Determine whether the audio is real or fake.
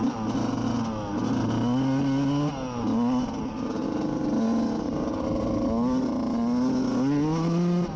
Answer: real